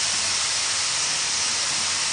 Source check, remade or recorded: recorded